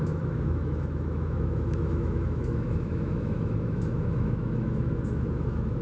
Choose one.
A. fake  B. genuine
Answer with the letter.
A